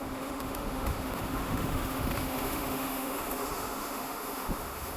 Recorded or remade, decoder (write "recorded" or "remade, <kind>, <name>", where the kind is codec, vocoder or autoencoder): remade, autoencoder, DAC-VAE